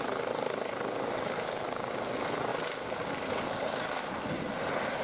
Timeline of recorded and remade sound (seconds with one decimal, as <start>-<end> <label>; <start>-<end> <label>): 0.0-5.0 recorded